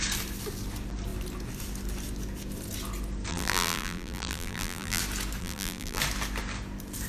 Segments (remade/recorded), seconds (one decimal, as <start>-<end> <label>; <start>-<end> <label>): 0.0-3.3 recorded; 3.3-5.0 remade; 5.0-5.4 recorded; 5.4-6.0 remade; 6.0-7.1 recorded